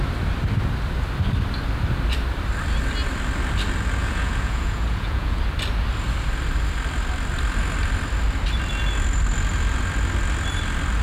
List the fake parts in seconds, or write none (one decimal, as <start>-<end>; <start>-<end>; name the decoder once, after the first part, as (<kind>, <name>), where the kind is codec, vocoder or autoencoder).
4.0-5.4 (vocoder, Vocos)